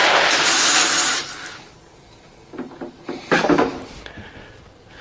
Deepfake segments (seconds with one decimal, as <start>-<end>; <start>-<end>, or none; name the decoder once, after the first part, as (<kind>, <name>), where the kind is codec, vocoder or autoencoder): 0.0-1.2 (vocoder, BigVGAN v2); 2.7-3.7; 4.2-5.0